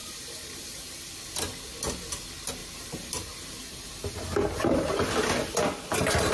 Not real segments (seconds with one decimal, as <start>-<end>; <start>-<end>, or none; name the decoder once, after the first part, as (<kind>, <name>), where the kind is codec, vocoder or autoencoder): 0.0-0.8 (vocoder, BigVGAN v2); 2.6-5.1